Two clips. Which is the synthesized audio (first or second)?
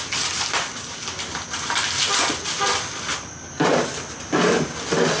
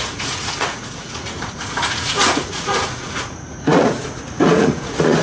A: second